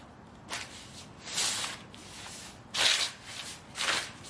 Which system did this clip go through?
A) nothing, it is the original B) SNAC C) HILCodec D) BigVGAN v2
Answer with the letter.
A